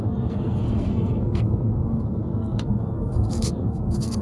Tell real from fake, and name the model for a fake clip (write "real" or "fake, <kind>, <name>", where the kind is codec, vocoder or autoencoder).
fake, codec, SNAC